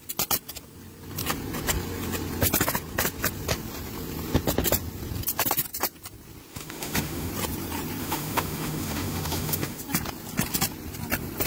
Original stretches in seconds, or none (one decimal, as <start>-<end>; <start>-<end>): 0.0-6.5; 7.3-8.0; 9.8-11.5